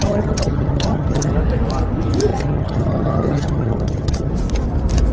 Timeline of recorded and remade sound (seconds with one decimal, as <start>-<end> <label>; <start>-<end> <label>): 0.0-1.3 remade; 1.3-2.3 recorded; 2.3-4.3 remade; 4.3-5.1 recorded